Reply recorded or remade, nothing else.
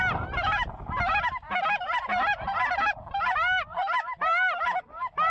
recorded